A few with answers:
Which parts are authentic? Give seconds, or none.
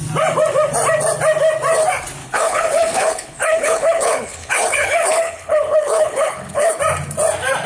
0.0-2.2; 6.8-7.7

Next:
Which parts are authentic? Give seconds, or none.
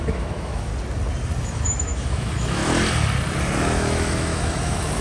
0.7-1.4; 2.6-3.6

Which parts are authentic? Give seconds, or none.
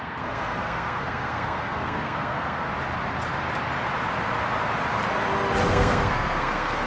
2.7-5.7